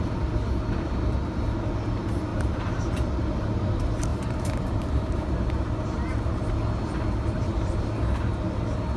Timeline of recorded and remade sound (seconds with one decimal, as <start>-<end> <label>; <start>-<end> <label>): 0.0-2.3 recorded; 2.3-2.8 remade; 2.8-4.1 recorded; 4.1-5.5 remade; 5.5-9.0 recorded